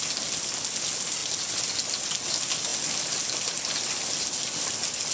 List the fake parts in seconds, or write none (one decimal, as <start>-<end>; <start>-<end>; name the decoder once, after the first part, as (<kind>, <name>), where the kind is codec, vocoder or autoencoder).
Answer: none